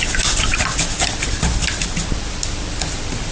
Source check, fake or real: real